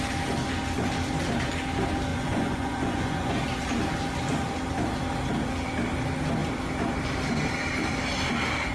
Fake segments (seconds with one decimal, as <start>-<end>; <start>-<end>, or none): 2.1-3.3